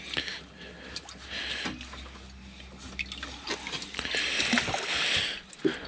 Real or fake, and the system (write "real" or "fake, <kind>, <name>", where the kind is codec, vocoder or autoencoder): real